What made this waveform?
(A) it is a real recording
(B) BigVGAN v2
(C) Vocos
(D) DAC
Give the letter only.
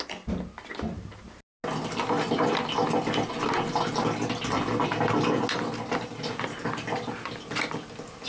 A